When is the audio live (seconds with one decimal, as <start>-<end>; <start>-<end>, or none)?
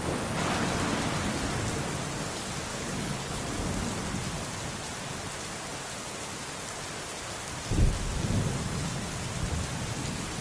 0.0-2.7; 3.4-10.4